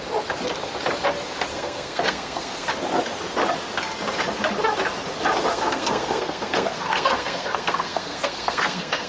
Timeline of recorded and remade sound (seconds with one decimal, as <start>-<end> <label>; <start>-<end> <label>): 0.0-1.5 recorded; 1.5-2.7 remade; 2.7-5.5 recorded; 5.5-9.1 remade